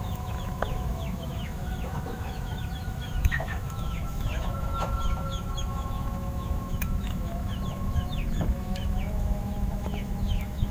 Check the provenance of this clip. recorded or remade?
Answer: remade